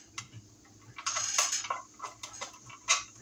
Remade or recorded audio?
recorded